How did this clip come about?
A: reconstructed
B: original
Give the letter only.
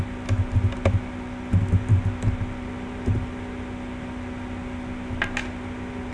B